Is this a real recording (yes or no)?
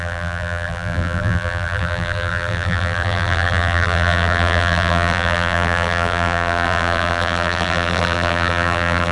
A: no